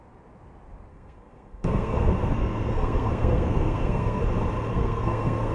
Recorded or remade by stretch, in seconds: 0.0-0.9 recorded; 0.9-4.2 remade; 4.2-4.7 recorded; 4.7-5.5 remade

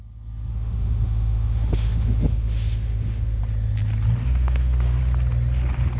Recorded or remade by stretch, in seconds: 0.0-0.5 recorded; 0.5-3.4 remade; 3.4-4.2 recorded; 4.2-5.0 remade; 5.0-6.0 recorded

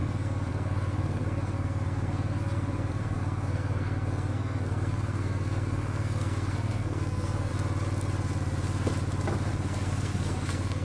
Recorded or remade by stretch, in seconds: 0.0-7.5 remade; 7.5-9.5 recorded; 9.5-10.8 remade

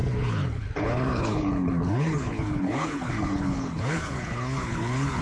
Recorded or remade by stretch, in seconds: 0.0-5.2 remade

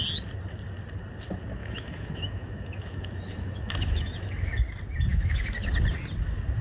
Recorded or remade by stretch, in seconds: 0.0-1.6 recorded; 1.6-4.6 remade; 4.6-5.1 recorded; 5.1-5.7 remade; 5.7-6.6 recorded

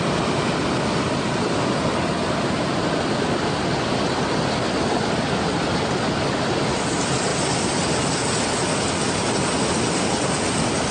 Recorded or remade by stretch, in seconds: 0.0-10.9 recorded

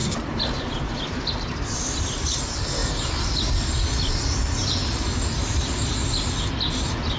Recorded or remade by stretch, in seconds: 0.0-7.2 recorded